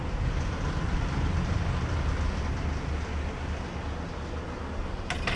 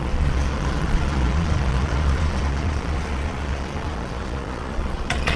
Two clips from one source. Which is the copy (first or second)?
second